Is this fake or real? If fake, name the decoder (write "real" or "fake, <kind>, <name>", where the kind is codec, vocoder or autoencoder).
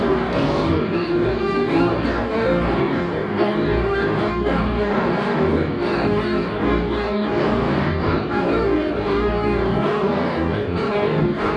fake, codec, DAC